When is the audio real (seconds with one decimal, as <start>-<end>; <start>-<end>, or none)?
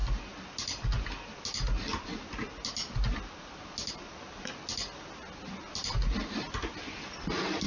0.0-7.7